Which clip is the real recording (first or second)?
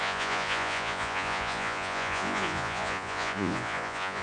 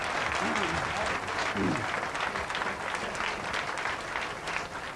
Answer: second